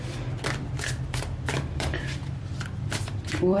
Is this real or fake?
fake